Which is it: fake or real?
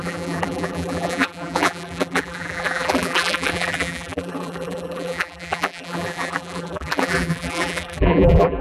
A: fake